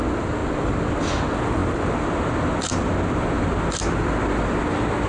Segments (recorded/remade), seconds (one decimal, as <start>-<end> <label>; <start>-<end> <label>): 0.0-5.1 recorded